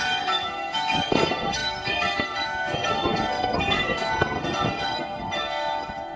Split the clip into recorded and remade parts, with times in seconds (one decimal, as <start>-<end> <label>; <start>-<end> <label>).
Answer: 0.0-6.2 remade

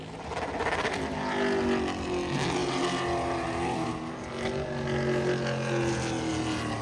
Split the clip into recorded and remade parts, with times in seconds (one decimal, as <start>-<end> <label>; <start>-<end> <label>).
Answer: 0.0-6.8 recorded

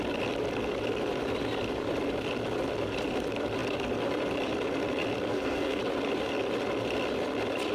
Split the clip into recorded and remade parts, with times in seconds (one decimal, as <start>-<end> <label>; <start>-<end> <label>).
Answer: 0.0-5.3 recorded; 5.3-5.8 remade; 5.8-7.7 recorded

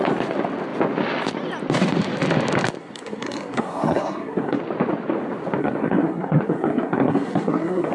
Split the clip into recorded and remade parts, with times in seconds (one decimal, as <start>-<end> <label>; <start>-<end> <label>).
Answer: 0.0-2.8 recorded; 2.8-4.6 remade; 4.6-5.6 recorded; 5.6-7.9 remade

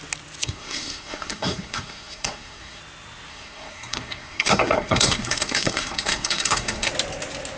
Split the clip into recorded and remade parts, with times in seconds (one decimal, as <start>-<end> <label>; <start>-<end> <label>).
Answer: 0.0-0.4 recorded; 0.4-2.8 remade; 2.8-3.3 recorded; 3.3-6.9 remade; 6.9-7.6 recorded